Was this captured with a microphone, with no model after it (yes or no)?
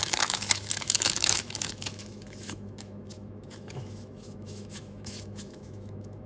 no